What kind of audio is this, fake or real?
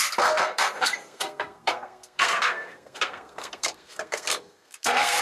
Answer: fake